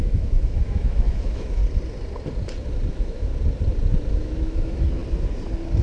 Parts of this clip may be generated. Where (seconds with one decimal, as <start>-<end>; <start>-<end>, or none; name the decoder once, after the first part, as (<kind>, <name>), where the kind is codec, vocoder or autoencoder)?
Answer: 0.0-1.6 (autoencoder, DAC-VAE); 2.9-3.3; 4.1-5.0